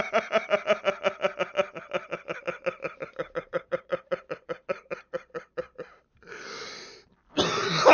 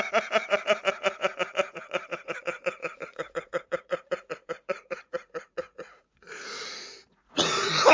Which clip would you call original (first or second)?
first